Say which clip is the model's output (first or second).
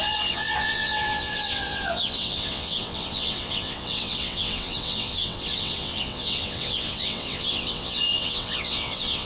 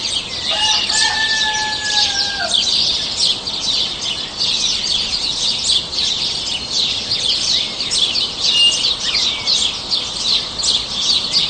first